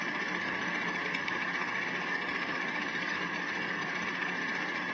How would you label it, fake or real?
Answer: fake